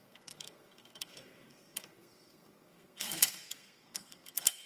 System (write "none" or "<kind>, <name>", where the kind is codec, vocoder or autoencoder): codec, SNAC